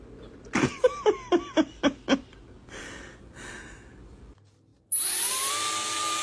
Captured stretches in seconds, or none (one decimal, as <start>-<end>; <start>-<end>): 0.0-6.2